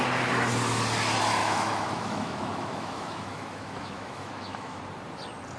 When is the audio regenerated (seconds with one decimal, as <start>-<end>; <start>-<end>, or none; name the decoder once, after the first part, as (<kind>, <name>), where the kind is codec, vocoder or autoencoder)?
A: 1.4-4.8 (autoencoder, DAC-VAE)